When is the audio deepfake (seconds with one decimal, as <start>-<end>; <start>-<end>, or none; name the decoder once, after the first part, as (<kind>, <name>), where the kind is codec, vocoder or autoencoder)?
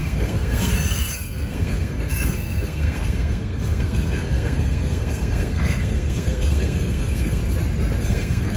0.0-7.4 (codec, SNAC); 8.0-8.6